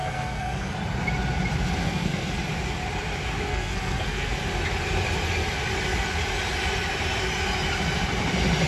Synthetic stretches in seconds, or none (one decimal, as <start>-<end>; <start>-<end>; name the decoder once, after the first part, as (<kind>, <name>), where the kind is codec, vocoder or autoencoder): 0.0-0.7 (codec, SNAC); 1.8-2.3; 3.5-4.3